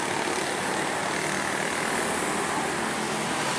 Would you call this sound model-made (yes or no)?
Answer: no